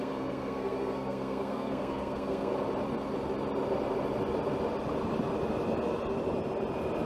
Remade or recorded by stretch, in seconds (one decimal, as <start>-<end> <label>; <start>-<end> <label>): 0.0-2.5 remade; 2.5-7.1 recorded